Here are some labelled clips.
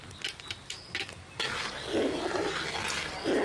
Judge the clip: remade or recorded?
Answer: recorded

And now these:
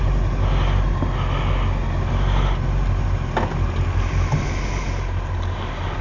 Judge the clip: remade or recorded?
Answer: recorded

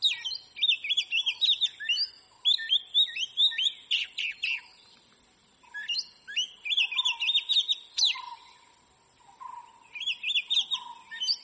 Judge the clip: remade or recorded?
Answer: recorded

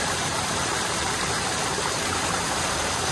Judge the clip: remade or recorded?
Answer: recorded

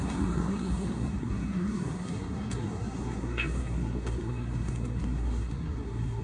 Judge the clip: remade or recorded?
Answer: remade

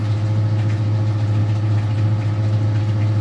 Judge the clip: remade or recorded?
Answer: recorded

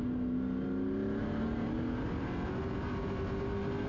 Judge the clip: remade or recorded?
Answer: recorded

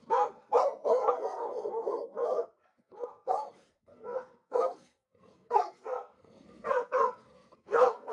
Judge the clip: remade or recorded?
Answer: remade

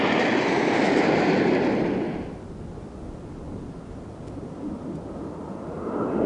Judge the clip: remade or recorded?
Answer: recorded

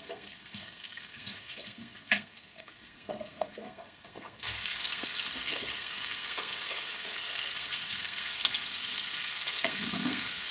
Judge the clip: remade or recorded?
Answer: remade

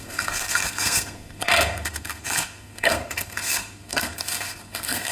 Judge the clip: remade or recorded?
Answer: remade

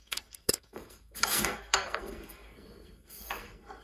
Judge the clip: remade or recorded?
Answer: remade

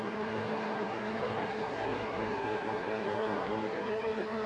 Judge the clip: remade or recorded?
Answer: remade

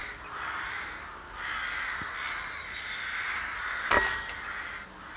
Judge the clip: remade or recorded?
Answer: recorded